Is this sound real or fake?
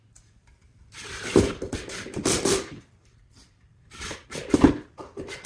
real